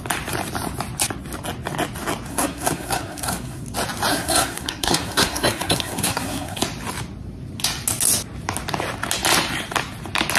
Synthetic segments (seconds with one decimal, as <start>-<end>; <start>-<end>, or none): 2.3-3.6; 4.1-6.6